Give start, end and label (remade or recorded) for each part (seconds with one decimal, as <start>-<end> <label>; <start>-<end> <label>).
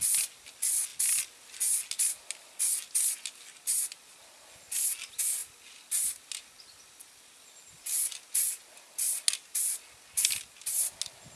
0.0-11.4 recorded